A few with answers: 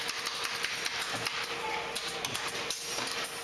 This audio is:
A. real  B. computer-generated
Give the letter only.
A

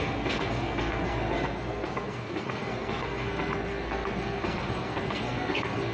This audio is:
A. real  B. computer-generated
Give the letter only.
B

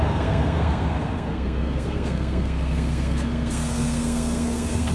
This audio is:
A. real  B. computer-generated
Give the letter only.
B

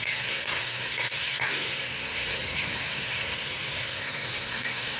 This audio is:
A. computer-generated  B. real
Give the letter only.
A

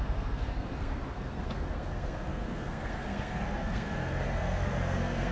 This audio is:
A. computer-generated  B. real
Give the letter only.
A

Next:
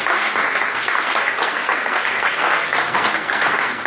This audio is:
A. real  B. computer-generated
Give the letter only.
B